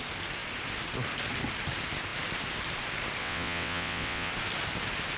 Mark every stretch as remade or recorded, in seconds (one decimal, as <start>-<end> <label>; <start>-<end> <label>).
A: 0.0-3.2 recorded; 3.2-4.3 remade; 4.3-5.2 recorded